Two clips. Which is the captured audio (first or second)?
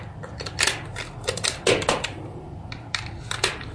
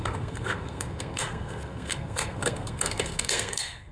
first